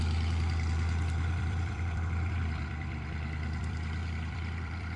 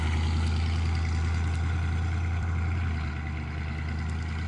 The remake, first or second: first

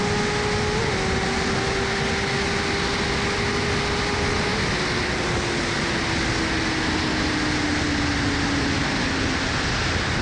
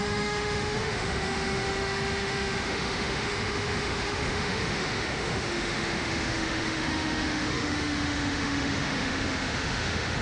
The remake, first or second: second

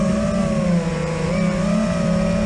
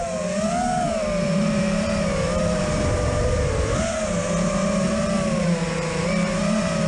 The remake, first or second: second